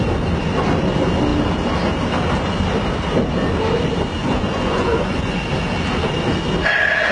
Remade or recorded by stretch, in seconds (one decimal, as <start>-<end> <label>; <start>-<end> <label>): 0.0-4.2 recorded; 4.2-5.4 remade; 5.4-7.1 recorded